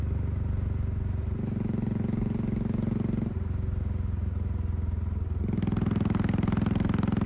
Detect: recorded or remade recorded